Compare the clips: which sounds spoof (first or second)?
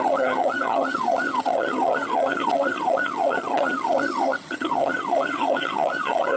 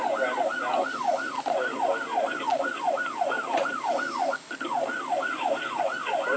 first